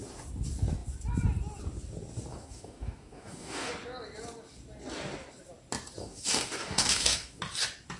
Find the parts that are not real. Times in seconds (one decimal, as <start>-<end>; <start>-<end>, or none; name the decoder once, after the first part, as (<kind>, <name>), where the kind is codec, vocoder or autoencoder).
2.3-3.7 (codec, DAC); 6.0-7.4